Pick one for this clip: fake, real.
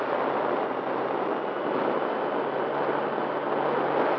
real